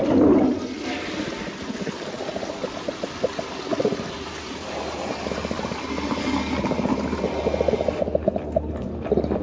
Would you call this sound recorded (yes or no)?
yes